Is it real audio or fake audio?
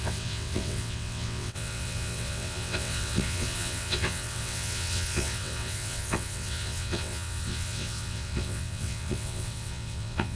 fake